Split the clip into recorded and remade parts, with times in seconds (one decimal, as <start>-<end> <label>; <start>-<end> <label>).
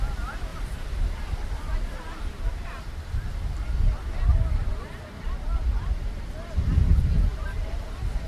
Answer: 0.0-8.3 recorded